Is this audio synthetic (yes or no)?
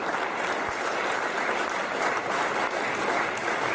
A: no